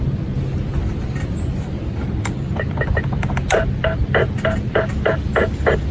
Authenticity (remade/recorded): recorded